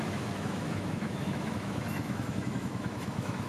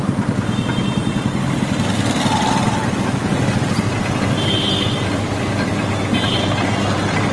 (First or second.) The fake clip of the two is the first